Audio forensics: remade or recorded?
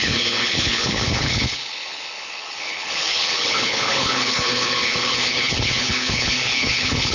remade